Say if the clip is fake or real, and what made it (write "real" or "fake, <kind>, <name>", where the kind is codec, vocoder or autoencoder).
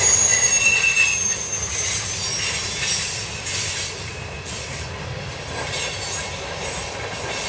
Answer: real